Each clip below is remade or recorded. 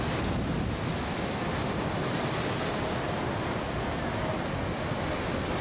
recorded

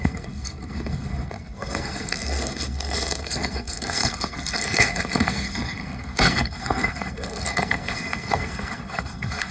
remade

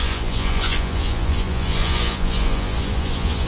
remade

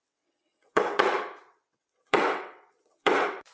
remade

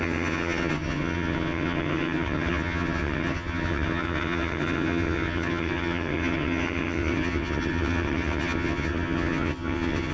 remade